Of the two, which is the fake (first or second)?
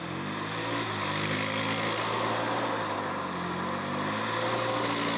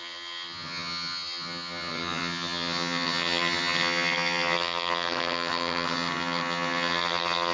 second